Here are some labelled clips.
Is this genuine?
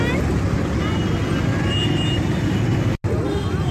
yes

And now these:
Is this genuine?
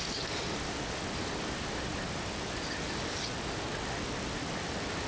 yes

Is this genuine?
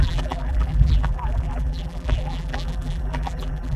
no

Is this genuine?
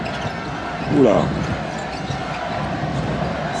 yes